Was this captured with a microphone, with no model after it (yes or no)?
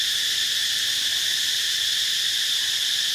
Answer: no